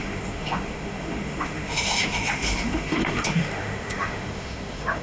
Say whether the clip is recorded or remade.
remade